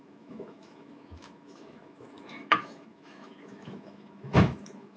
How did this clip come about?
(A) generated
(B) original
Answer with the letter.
A